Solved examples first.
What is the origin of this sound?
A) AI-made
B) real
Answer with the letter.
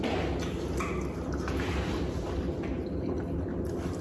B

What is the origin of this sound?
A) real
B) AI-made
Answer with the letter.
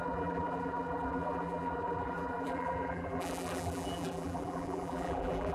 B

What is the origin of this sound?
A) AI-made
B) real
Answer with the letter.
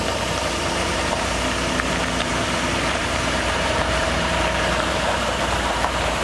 A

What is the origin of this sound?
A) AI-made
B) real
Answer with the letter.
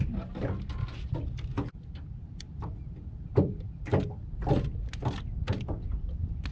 B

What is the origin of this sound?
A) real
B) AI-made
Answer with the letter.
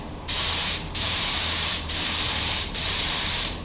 B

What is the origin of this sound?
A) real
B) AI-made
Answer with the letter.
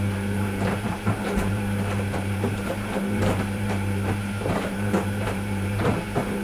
B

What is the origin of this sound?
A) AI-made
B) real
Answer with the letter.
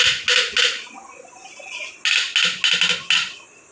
B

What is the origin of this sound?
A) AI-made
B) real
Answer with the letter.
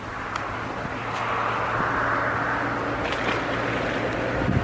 B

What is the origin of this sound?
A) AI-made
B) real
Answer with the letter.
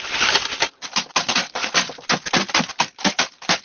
B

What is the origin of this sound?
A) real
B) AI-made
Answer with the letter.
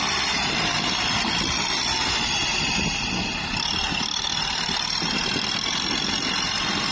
B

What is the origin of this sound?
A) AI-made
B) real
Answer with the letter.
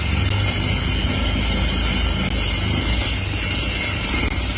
B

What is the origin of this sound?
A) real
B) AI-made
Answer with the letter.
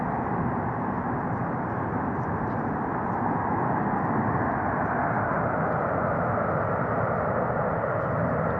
A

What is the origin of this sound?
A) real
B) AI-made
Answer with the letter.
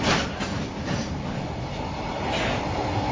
A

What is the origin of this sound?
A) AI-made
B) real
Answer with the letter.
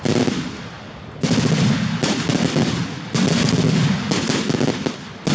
B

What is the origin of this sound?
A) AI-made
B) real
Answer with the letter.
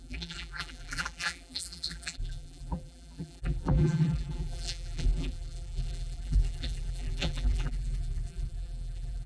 A